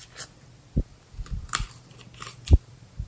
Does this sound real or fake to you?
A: real